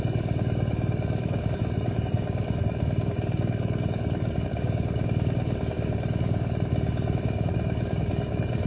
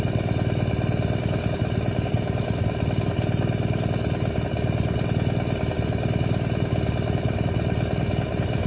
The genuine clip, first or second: second